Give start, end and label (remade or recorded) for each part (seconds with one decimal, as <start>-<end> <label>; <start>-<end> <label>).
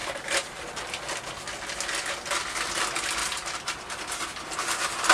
0.0-0.6 remade; 0.6-3.2 recorded; 3.2-4.0 remade; 4.0-5.1 recorded